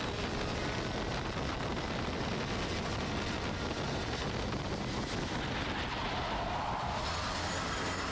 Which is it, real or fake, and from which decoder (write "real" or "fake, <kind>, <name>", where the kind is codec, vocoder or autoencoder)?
real